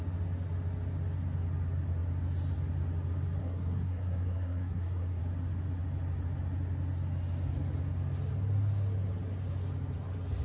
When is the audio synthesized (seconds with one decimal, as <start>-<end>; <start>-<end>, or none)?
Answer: 3.4-5.2